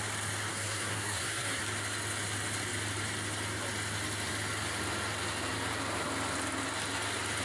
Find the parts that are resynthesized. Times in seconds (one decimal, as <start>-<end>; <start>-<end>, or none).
0.5-1.6